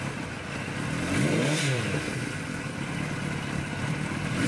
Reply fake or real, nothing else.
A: real